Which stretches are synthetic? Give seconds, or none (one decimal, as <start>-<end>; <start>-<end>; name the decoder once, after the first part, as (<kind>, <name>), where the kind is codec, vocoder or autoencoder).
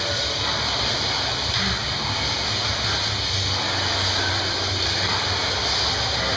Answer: none